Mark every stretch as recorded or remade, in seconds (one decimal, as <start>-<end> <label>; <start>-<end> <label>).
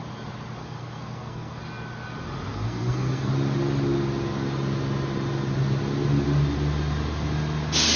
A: 0.0-0.6 recorded; 0.6-1.6 remade; 1.6-2.5 recorded; 2.5-3.3 remade; 3.3-8.0 recorded